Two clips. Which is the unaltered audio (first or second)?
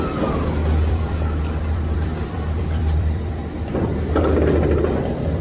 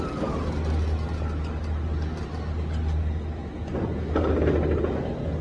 second